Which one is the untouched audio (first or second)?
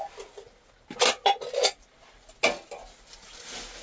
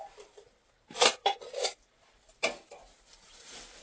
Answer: first